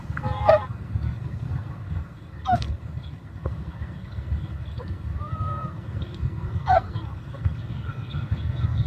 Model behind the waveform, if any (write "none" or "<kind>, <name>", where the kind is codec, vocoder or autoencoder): codec, SNAC